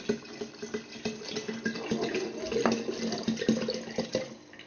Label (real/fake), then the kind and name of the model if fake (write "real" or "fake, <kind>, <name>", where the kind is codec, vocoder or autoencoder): real